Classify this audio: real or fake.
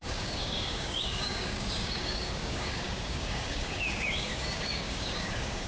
fake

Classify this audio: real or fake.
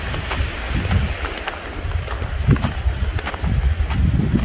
real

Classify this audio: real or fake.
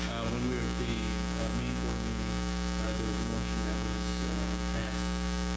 fake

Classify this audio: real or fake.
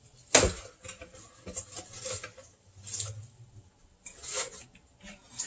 real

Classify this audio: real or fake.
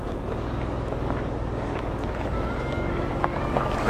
fake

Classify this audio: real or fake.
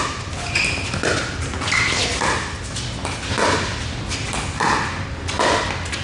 real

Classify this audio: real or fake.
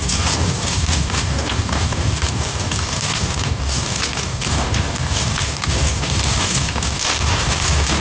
fake